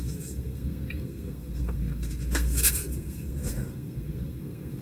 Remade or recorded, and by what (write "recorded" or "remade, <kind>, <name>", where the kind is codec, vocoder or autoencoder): remade, codec, SNAC